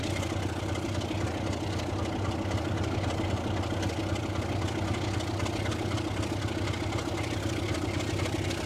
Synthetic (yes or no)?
no